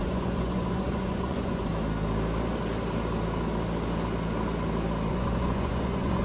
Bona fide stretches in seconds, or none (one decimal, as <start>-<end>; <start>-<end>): 1.7-5.1